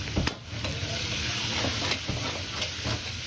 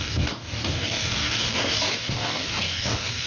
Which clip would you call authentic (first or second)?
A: first